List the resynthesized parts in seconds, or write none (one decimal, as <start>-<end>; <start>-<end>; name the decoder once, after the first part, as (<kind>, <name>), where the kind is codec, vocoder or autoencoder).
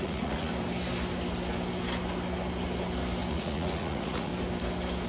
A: 0.0-0.5 (vocoder, Vocos); 3.3-4.3